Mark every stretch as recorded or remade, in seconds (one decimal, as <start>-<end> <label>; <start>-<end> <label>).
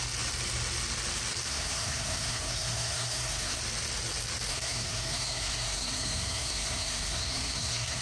0.0-1.5 recorded; 1.5-3.6 remade; 3.6-4.5 recorded; 4.5-8.0 remade